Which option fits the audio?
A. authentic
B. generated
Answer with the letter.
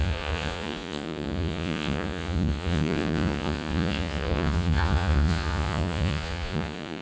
B